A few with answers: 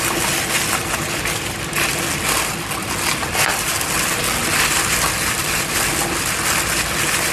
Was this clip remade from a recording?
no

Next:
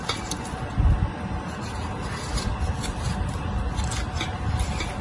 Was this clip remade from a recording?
no